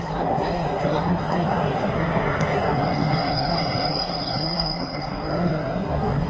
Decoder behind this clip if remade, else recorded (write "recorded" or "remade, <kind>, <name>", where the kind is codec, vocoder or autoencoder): remade, codec, SNAC